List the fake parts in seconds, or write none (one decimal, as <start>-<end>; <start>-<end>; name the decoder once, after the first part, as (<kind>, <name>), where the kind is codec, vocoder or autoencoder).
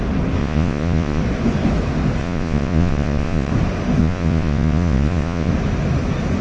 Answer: 0.4-1.2 (vocoder, Vocos); 2.2-3.5; 4.0-5.5